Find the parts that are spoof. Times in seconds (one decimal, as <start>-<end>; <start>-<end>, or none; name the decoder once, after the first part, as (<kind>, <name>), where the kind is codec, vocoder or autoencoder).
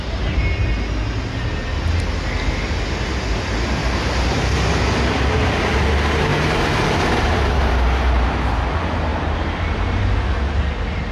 3.8-4.8 (vocoder, BigVGAN v2); 6.3-7.1; 9.1-10.0